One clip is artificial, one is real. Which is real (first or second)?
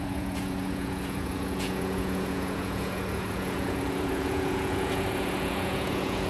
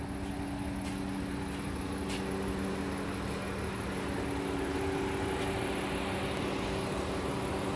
second